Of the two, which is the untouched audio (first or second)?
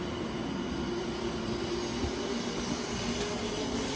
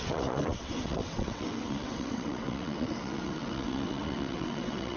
first